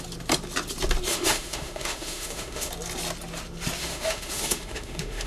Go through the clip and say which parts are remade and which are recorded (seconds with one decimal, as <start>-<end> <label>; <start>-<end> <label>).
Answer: 0.0-1.1 recorded; 1.1-2.7 remade; 2.7-3.8 recorded; 3.8-5.3 remade